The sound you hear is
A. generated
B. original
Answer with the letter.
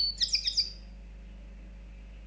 B